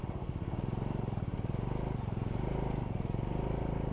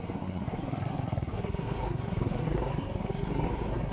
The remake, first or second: second